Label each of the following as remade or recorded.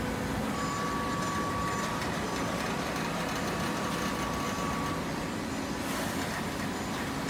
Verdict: recorded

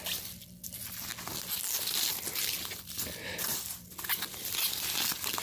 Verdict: recorded